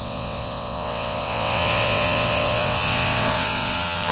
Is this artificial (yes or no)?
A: yes